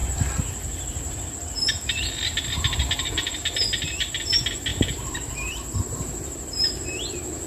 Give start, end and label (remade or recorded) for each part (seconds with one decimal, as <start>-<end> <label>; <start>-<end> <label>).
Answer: 0.0-1.3 remade; 1.3-4.7 recorded; 4.7-7.1 remade; 7.1-7.5 recorded